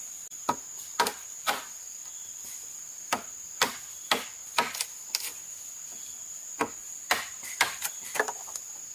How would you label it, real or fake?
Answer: real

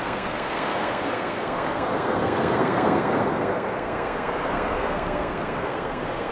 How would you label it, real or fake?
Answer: fake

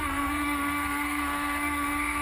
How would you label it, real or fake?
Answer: fake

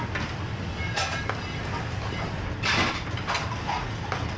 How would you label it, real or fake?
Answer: real